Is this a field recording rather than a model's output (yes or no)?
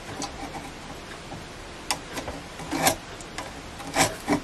yes